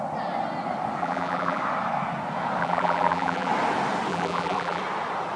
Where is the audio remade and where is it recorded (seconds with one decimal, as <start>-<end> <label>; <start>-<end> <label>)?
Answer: 0.0-1.0 recorded; 1.0-1.6 remade; 1.6-2.6 recorded; 2.6-3.5 remade; 3.5-4.1 recorded; 4.1-4.8 remade; 4.8-5.4 recorded

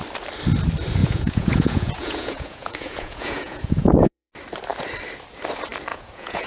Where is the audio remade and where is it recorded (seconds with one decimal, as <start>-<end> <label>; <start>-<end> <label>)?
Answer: 0.0-1.0 recorded; 1.0-4.3 remade; 4.3-5.9 recorded; 5.9-6.5 remade

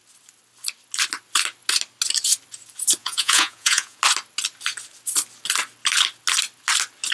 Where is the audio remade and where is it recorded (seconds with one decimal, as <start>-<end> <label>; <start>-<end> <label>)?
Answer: 0.0-3.0 recorded; 3.0-4.0 remade; 4.0-7.1 recorded

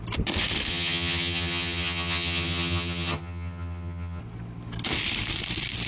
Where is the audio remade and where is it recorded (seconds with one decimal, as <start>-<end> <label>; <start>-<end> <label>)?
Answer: 0.0-0.7 recorded; 0.7-4.2 remade; 4.2-5.9 recorded

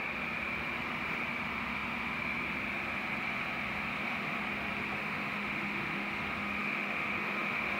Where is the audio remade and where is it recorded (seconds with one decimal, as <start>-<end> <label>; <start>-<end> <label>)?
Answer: 0.0-3.9 recorded; 3.9-4.4 remade; 4.4-5.0 recorded; 5.0-7.8 remade

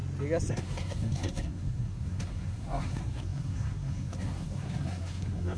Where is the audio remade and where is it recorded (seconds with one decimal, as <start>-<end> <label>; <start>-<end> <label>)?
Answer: 0.0-0.5 recorded; 0.5-5.6 remade